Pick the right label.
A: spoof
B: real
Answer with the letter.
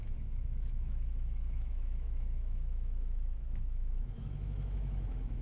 A